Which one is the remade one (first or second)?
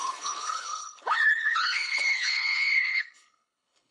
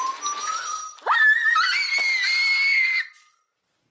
first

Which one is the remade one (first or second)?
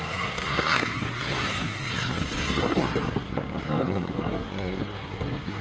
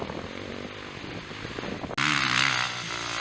first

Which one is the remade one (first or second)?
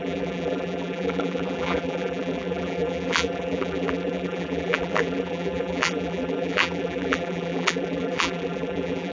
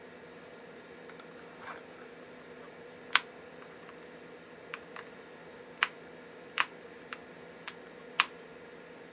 first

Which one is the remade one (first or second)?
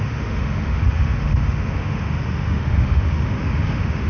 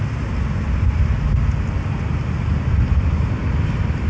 first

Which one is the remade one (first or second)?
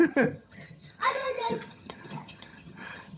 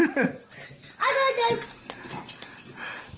first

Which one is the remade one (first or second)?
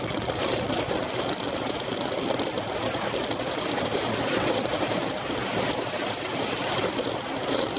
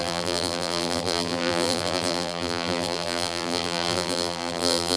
second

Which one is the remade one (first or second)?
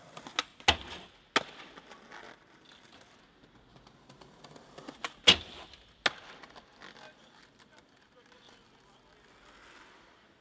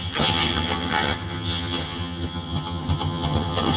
second